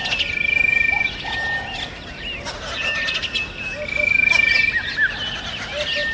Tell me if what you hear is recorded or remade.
recorded